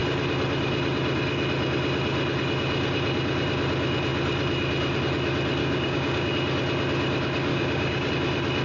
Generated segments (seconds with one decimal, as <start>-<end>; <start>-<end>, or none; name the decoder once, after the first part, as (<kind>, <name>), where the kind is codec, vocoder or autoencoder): 5.6-6.3 (codec, DAC); 7.5-8.1